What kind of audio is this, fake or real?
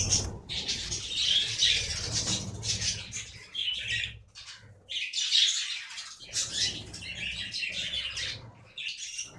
real